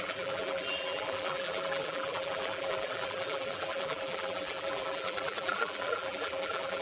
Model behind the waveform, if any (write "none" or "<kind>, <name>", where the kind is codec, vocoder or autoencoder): vocoder, BigVGAN v2